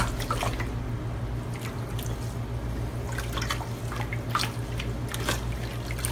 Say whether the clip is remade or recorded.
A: recorded